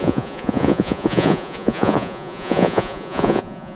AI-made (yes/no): yes